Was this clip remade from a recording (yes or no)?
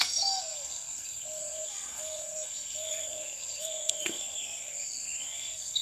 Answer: yes